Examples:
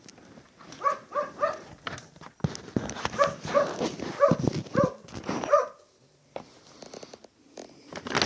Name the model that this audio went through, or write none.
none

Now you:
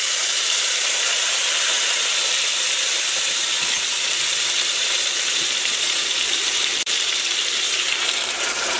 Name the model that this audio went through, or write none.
vocoder, BigVGAN v2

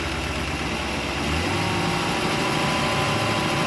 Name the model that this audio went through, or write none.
none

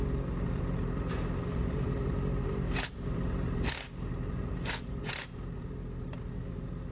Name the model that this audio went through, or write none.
vocoder, BigVGAN v2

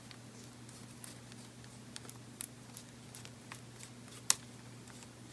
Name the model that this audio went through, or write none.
none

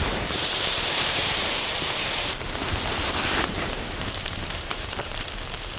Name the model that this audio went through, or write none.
vocoder, BigVGAN v2